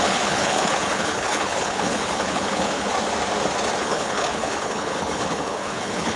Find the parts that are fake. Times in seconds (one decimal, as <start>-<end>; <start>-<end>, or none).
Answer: 0.0-2.9; 3.8-6.2